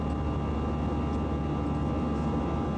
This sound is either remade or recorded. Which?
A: recorded